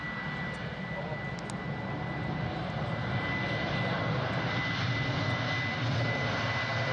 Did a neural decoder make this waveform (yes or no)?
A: no